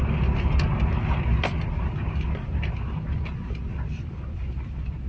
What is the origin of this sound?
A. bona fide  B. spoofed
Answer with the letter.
A